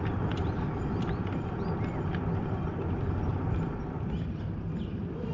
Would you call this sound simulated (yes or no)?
no